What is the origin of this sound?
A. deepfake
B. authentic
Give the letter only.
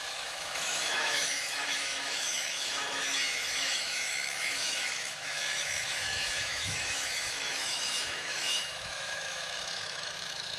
A